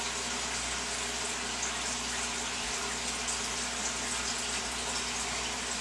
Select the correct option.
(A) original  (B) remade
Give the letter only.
A